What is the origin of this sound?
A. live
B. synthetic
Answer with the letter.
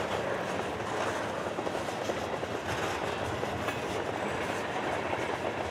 A